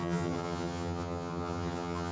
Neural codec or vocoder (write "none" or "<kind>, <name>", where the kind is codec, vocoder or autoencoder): vocoder, HiFi-GAN